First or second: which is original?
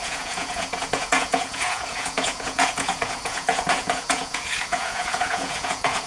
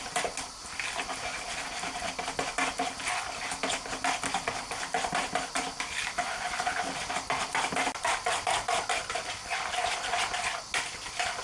second